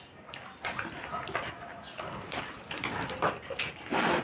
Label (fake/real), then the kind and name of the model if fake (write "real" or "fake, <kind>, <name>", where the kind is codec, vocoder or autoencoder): real